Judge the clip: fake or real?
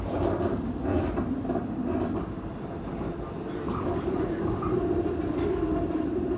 real